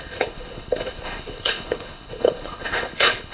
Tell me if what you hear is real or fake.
fake